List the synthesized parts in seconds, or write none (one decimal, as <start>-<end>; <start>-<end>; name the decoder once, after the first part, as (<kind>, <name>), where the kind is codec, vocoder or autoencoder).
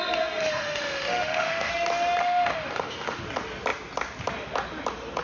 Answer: 0.4-1.7 (autoencoder, DAC-VAE); 2.2-3.2